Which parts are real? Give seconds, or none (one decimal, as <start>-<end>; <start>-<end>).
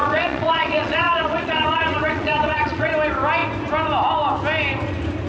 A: 2.9-5.3